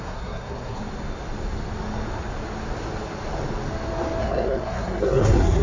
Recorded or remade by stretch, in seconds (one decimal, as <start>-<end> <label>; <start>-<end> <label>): 0.0-0.8 remade; 0.8-4.2 recorded; 4.2-5.6 remade